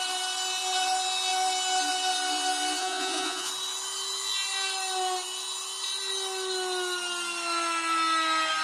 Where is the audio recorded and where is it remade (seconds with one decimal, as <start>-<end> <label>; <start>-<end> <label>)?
0.0-2.8 recorded; 2.8-3.5 remade; 3.5-8.6 recorded